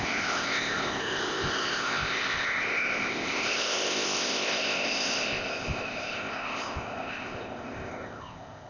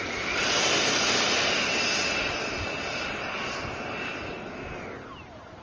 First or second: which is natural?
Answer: second